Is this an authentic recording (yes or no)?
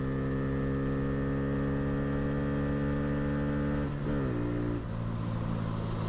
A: yes